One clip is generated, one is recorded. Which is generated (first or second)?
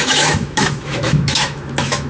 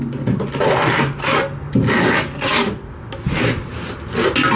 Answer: first